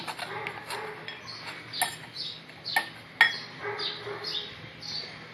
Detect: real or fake real